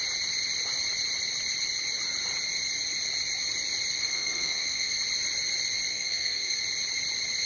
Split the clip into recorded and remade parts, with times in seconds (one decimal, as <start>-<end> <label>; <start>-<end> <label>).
0.0-4.0 recorded; 4.0-4.9 remade; 4.9-5.9 recorded; 5.9-6.6 remade; 6.6-7.5 recorded

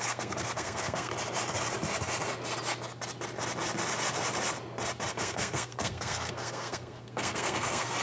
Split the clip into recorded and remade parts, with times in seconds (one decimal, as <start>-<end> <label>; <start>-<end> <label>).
0.0-1.1 remade; 1.1-5.1 recorded; 5.1-8.0 remade

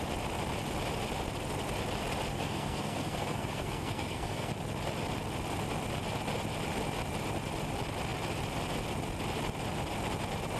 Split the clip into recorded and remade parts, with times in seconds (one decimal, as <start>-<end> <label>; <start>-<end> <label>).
0.0-2.3 recorded; 2.3-4.5 remade; 4.5-10.6 recorded

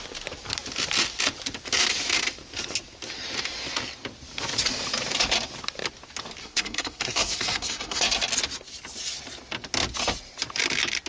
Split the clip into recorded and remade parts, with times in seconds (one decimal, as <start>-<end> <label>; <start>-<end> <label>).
0.0-6.4 recorded; 6.4-8.0 remade; 8.0-11.1 recorded

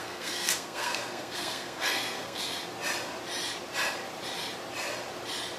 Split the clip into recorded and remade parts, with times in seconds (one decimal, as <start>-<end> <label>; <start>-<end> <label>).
0.0-2.4 remade; 2.4-5.6 recorded

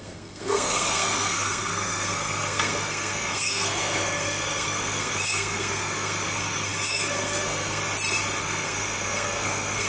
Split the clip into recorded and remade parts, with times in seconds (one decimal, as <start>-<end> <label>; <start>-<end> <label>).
0.0-7.8 remade; 7.8-8.4 recorded; 8.4-9.9 remade

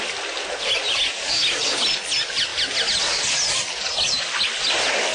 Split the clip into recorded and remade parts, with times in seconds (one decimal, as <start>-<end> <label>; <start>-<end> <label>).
0.0-5.1 recorded